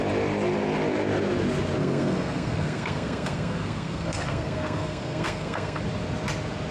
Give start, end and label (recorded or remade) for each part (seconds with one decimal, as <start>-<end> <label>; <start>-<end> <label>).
0.0-1.8 recorded; 1.8-5.8 remade; 5.8-6.7 recorded